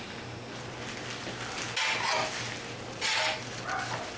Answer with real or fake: real